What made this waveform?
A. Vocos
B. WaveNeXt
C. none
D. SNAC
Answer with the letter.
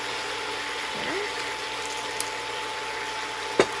C